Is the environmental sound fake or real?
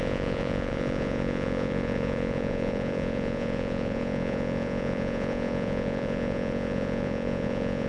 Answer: fake